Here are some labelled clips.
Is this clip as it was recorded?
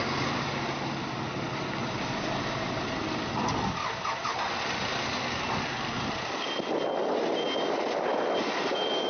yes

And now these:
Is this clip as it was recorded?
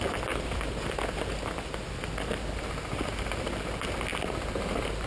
yes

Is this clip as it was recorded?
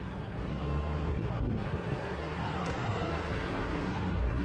no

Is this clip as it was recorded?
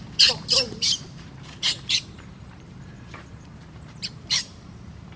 no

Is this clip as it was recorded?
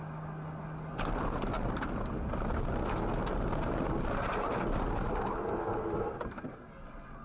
yes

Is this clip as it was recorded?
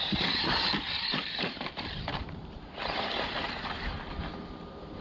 no